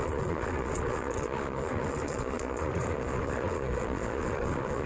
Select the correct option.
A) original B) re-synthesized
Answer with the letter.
B